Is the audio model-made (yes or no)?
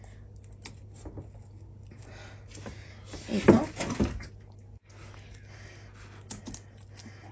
no